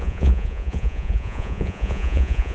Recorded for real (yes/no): no